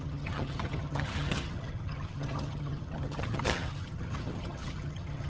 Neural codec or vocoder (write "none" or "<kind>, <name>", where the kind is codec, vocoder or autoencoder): vocoder, HiFi-GAN